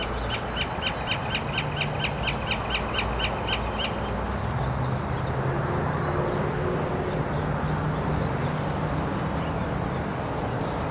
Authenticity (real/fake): real